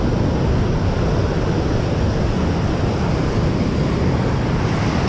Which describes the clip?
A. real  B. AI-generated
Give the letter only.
A